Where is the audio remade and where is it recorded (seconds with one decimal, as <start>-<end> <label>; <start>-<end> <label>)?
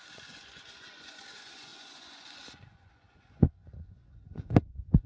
0.0-5.1 remade